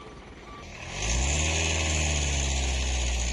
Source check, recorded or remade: recorded